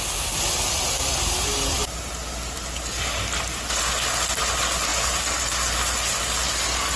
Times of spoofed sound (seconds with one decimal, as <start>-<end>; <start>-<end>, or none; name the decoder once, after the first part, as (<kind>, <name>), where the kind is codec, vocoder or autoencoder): none